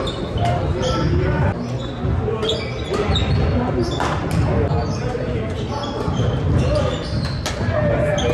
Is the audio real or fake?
real